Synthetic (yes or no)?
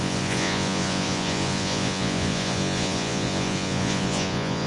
yes